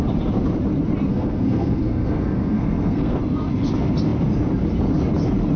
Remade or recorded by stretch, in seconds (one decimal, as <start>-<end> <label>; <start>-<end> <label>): 0.0-1.1 recorded; 1.1-3.2 remade; 3.2-5.6 recorded